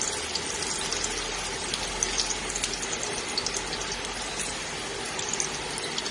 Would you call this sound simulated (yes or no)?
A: no